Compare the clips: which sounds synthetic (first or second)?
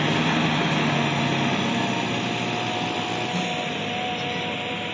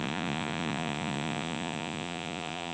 second